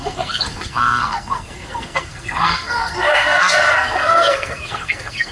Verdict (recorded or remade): remade